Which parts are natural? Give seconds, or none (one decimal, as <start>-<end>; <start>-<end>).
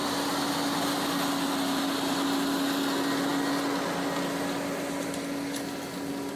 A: 0.0-6.4